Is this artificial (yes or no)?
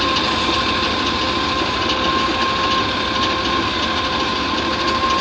no